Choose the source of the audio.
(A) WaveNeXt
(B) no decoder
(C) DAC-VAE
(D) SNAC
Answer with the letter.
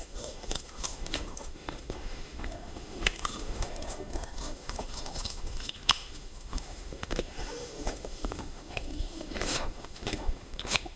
C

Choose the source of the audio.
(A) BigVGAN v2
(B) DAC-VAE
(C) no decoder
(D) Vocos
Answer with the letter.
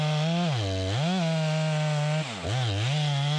C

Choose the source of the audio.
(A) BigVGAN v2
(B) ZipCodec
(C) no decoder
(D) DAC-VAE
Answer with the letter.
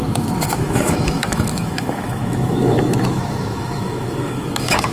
D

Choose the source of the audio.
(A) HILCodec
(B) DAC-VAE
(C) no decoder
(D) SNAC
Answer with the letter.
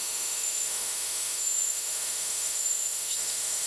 B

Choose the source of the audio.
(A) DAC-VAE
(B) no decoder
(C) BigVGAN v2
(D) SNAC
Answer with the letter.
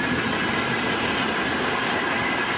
B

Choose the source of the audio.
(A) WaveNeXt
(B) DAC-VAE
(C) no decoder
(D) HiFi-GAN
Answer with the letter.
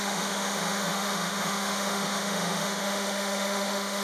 B